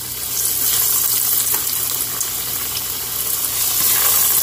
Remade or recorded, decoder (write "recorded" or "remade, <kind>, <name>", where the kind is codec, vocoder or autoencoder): remade, vocoder, BigVGAN v2